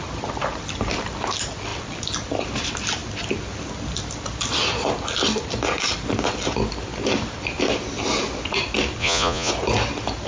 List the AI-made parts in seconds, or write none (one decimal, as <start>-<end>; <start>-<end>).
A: 9.0-9.5